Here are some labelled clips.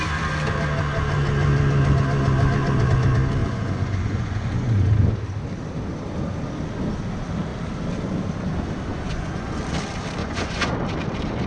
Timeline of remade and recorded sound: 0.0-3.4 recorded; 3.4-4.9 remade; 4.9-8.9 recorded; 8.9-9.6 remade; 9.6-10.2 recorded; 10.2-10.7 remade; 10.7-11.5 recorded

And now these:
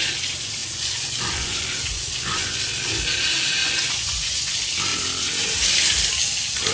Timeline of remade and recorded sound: 0.0-0.6 recorded; 0.6-2.6 remade; 2.6-3.6 recorded; 3.6-4.5 remade; 4.5-6.7 recorded

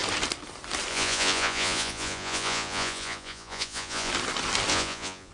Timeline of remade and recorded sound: 0.0-0.9 recorded; 0.9-4.1 remade; 4.1-4.7 recorded; 4.7-5.3 remade

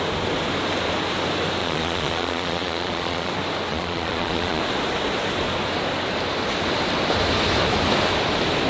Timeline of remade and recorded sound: 0.0-1.6 recorded; 1.6-3.3 remade; 3.3-3.7 recorded; 3.7-4.6 remade; 4.6-8.7 recorded

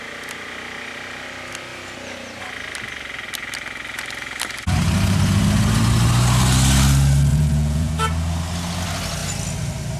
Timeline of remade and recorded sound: 0.0-7.3 recorded; 7.3-7.9 remade; 7.9-10.0 recorded

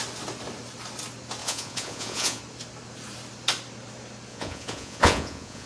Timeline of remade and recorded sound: 0.0-1.4 recorded; 1.4-2.4 remade; 2.4-4.3 recorded; 4.3-5.7 remade